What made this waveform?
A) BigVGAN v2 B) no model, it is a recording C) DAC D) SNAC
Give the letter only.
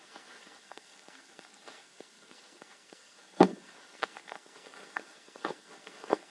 D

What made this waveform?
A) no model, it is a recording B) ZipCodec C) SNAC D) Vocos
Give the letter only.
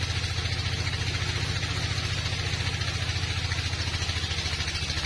A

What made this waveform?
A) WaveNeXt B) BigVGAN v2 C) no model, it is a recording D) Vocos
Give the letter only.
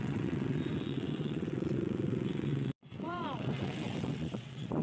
A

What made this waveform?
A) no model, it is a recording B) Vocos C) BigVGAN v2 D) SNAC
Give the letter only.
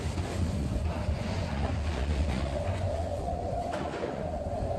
B